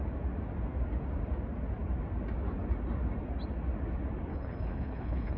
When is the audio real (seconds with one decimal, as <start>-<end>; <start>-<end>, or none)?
0.0-4.3